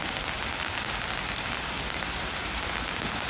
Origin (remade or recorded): recorded